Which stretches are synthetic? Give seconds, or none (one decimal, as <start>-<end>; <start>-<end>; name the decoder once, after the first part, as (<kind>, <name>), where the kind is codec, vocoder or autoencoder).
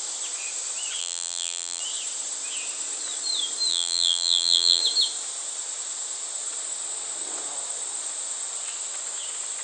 1.0-1.8 (vocoder, BigVGAN v2); 3.7-4.8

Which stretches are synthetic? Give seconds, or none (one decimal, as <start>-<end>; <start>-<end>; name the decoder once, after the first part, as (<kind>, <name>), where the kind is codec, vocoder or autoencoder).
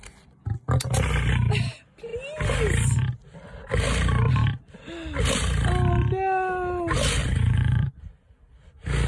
7.2-8.0 (vocoder, Vocos)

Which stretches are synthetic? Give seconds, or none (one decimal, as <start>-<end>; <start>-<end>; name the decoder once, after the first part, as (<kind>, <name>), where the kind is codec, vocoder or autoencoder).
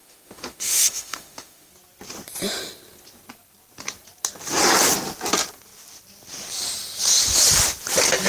0.0-1.7 (autoencoder, DAC-VAE)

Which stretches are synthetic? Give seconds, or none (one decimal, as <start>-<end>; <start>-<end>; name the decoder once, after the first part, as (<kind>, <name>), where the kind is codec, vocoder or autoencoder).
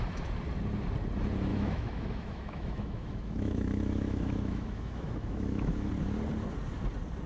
1.5-5.9 (autoencoder, DAC-VAE)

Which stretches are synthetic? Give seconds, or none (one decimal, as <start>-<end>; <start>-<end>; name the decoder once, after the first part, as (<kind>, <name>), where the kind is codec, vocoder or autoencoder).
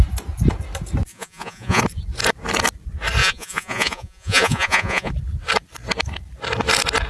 1.1-1.8 (vocoder, Vocos); 3.2-5.1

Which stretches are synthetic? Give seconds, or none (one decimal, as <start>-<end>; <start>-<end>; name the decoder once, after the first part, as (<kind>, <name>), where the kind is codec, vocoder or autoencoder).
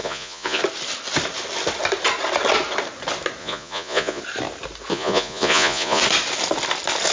0.0-0.6 (vocoder, Vocos); 3.4-4.2; 4.9-6.0